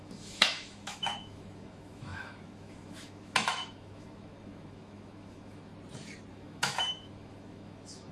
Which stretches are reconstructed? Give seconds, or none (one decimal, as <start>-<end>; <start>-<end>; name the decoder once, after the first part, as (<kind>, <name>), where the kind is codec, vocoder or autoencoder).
0.0-5.7 (autoencoder, DAC-VAE); 6.3-8.1